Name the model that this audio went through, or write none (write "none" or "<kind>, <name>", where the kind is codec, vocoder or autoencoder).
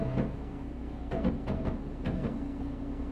codec, SNAC